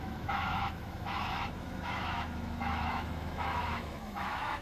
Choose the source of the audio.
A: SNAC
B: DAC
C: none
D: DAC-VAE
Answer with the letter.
D